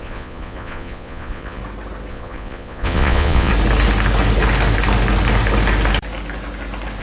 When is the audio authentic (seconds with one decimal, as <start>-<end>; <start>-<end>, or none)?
1.6-2.1; 3.5-7.0